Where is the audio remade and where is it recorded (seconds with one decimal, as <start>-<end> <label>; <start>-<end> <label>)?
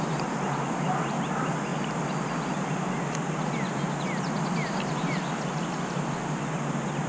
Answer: 0.0-7.1 recorded